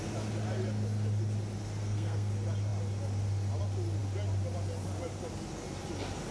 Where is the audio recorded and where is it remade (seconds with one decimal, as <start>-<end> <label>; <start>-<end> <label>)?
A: 0.0-1.8 recorded; 1.8-2.3 remade; 2.3-6.3 recorded